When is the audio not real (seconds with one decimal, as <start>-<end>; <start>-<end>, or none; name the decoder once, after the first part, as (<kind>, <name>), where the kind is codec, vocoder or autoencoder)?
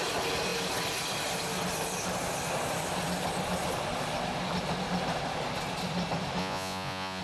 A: 6.4-7.2 (vocoder, Vocos)